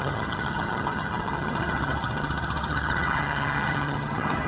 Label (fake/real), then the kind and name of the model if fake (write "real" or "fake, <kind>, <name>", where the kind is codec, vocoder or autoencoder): fake, vocoder, HiFi-GAN